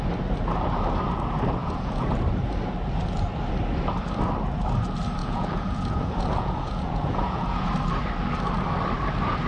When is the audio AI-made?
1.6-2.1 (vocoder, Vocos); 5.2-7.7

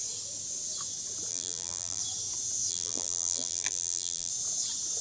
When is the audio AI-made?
1.3-2.0 (vocoder, BigVGAN v2); 2.7-4.3

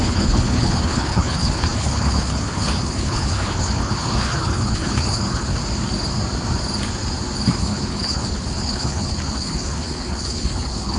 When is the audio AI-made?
0.0-5.6 (codec, HILCodec); 7.6-11.0

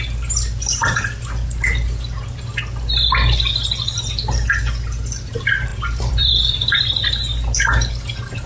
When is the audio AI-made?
5.7-6.8 (vocoder, BigVGAN v2)

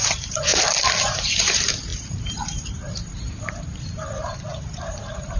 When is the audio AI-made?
0.0-0.5 (vocoder, BigVGAN v2); 1.0-5.4

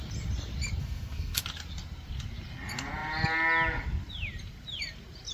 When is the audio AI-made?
0.8-1.4 (codec, SNAC)

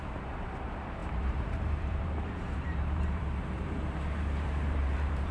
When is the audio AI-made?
0.0-5.3 (vocoder, BigVGAN v2)